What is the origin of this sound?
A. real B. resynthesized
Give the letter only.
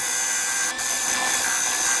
A